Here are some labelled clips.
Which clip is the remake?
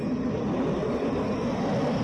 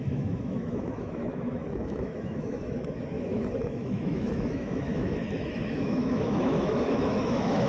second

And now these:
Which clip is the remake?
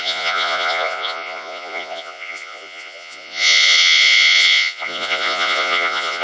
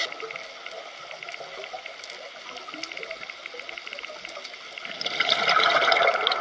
first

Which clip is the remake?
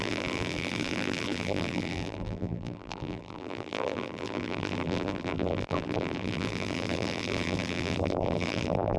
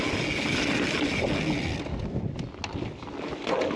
first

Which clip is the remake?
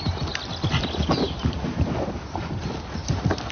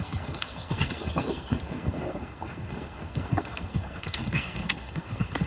second